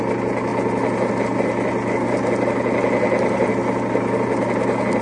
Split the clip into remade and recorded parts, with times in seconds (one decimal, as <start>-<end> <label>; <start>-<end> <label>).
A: 0.0-5.0 recorded